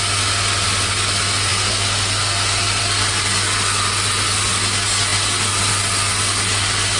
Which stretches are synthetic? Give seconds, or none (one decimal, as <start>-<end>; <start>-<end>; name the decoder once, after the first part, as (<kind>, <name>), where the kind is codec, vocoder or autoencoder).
none